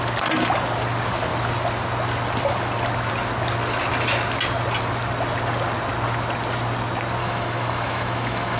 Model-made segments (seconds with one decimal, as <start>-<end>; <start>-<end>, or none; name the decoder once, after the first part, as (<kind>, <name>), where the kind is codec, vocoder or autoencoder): 7.2-8.6 (autoencoder, DAC-VAE)